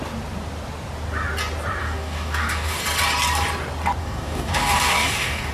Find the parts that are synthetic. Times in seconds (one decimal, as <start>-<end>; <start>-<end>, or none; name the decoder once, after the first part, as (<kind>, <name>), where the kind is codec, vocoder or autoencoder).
1.8-2.8 (codec, DAC); 4.0-5.5